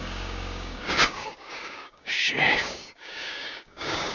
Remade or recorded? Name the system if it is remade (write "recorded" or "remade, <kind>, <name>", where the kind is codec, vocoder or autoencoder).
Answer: remade, codec, DAC